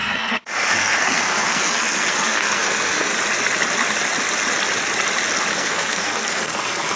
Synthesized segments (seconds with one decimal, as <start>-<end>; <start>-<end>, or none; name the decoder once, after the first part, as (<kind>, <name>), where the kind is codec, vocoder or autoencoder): 0.0-3.1 (codec, SNAC); 5.5-7.0